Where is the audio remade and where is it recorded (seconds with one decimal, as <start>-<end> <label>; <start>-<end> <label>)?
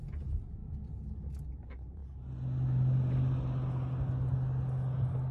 0.0-0.6 remade; 0.6-1.5 recorded; 1.5-2.0 remade; 2.0-5.3 recorded